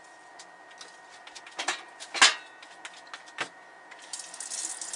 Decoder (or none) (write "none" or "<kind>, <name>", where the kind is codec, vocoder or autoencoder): none